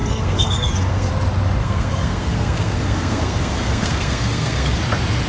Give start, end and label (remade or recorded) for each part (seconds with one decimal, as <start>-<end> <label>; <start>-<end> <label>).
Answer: 0.0-1.1 remade; 1.1-1.6 recorded; 1.6-4.8 remade; 4.8-5.3 recorded